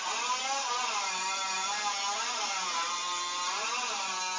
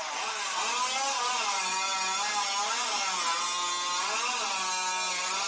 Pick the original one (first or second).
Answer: second